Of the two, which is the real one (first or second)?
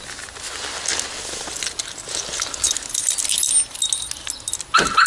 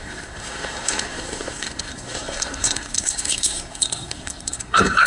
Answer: first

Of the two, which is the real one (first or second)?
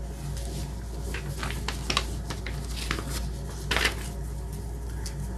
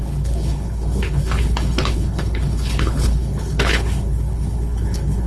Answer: first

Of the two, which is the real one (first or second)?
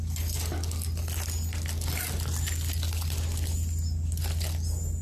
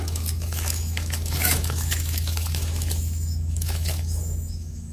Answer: first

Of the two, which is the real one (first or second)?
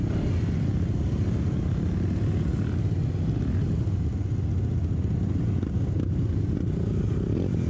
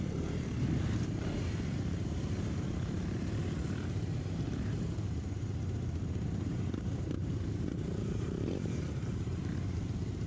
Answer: first